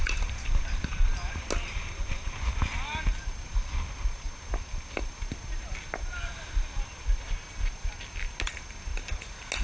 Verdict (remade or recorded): recorded